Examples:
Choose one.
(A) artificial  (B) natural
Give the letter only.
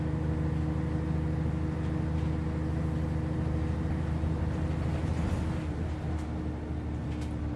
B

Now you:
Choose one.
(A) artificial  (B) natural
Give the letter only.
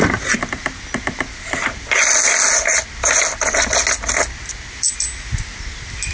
B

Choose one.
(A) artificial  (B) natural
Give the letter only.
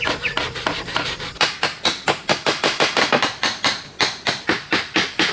B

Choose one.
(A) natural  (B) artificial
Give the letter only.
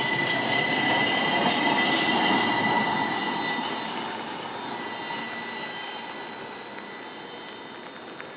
A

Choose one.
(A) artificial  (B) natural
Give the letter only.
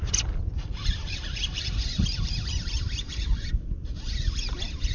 B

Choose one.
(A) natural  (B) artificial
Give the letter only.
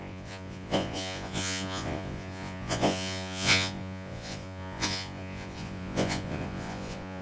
B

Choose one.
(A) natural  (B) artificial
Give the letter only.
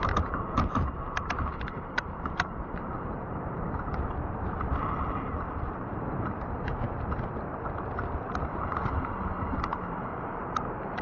B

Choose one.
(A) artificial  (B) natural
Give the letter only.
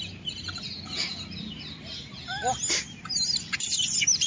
B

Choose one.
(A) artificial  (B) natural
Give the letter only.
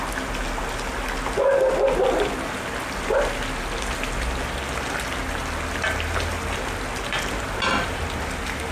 B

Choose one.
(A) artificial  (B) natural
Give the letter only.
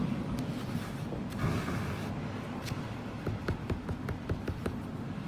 B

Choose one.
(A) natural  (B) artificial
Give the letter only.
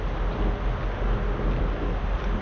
A